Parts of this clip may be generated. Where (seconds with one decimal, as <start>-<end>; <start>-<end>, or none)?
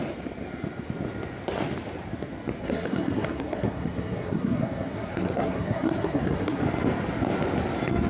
2.6-6.6